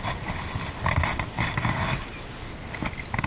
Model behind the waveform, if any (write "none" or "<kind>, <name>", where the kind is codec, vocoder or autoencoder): none